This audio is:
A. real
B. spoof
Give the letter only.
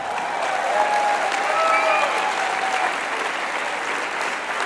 A